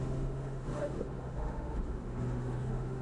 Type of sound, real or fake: fake